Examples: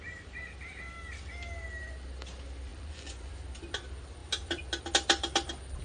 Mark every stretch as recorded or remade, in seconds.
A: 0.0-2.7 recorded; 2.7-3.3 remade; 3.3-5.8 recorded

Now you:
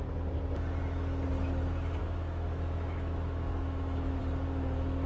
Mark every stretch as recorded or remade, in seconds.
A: 0.0-2.0 recorded; 2.0-4.2 remade; 4.2-5.1 recorded

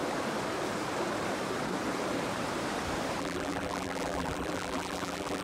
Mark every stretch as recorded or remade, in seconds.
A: 0.0-3.2 recorded; 3.2-5.4 remade

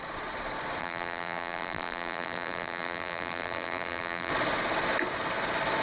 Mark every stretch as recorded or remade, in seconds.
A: 0.0-0.8 recorded; 0.8-4.3 remade; 4.3-5.8 recorded

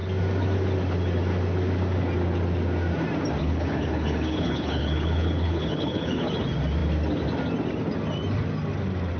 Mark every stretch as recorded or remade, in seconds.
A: 0.0-3.4 recorded; 3.4-6.3 remade; 6.3-9.2 recorded

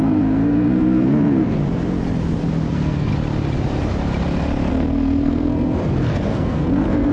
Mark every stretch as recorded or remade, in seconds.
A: 0.0-1.6 remade; 1.6-2.7 recorded; 2.7-3.1 remade; 3.1-4.7 recorded; 4.7-7.1 remade

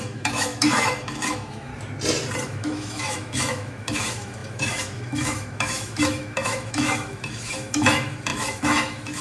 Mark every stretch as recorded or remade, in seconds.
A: 0.0-1.7 remade; 1.7-2.4 recorded; 2.4-9.2 remade